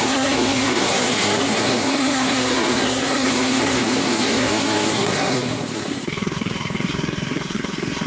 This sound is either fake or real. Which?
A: fake